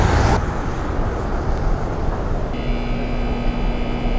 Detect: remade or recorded recorded